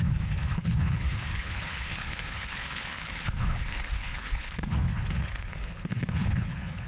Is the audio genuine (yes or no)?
no